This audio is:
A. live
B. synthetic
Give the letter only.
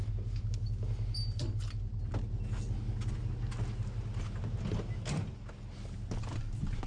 A